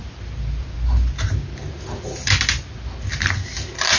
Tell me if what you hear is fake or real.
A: real